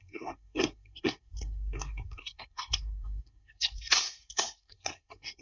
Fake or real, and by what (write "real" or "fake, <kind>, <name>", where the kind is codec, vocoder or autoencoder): fake, codec, SNAC